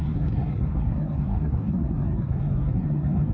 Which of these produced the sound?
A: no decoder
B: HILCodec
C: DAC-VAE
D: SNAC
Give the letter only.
D